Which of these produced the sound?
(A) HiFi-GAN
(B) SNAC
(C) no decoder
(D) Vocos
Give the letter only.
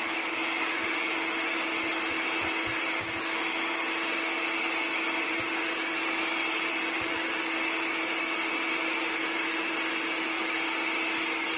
C